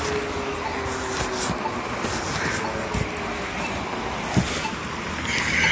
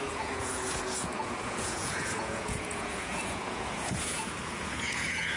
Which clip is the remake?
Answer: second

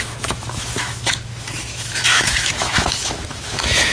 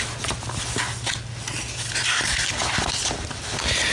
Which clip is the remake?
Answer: first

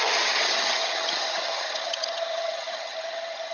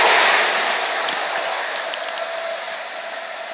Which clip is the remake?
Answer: first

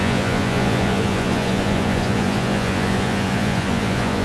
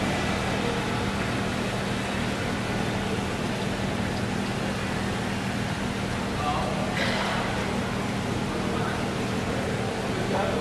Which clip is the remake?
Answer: first